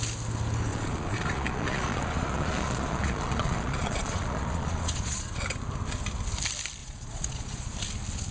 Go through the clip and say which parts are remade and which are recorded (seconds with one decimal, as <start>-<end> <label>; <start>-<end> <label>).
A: 0.0-0.7 recorded; 0.7-5.4 remade; 5.4-6.8 recorded; 6.8-7.7 remade; 7.7-8.3 recorded